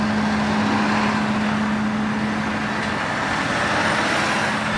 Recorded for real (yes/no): yes